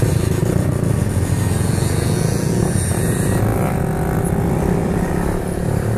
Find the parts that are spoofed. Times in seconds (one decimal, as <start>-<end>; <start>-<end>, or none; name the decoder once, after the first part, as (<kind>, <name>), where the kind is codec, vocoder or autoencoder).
0.0-0.4 (vocoder, BigVGAN v2); 2.6-3.5; 4.2-6.0